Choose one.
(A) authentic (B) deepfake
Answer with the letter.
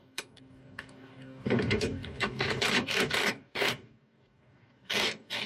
B